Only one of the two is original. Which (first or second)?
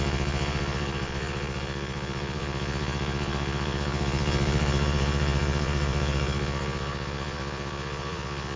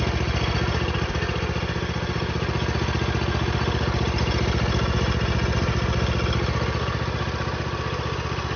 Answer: second